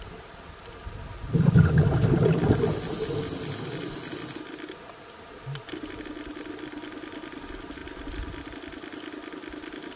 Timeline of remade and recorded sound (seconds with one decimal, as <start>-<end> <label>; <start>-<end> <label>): 0.0-10.0 recorded